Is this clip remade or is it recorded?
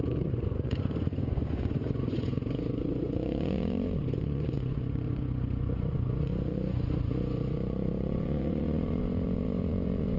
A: remade